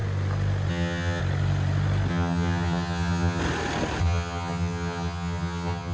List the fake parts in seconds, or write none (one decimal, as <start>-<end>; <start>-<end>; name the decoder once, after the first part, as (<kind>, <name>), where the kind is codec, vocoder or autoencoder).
0.7-1.2 (vocoder, HiFi-GAN); 2.1-3.4; 4.0-5.9